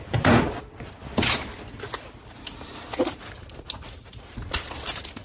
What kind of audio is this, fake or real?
real